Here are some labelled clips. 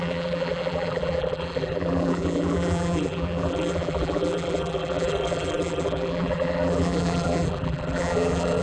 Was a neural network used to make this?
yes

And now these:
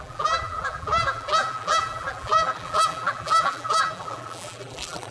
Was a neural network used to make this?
yes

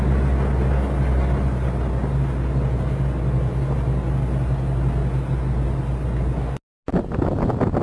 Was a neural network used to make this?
no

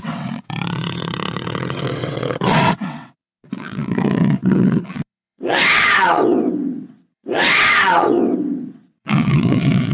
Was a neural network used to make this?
yes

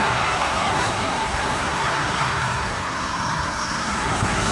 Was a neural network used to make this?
yes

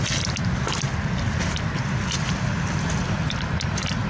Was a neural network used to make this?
no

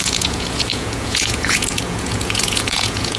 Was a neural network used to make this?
yes